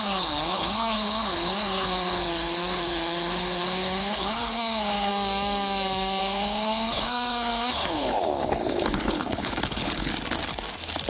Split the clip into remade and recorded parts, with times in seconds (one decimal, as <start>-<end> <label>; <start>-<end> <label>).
0.0-5.1 remade; 5.1-6.2 recorded; 6.2-10.1 remade; 10.1-11.1 recorded